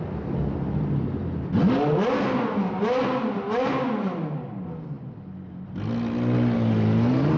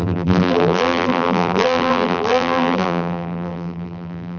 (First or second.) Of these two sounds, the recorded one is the first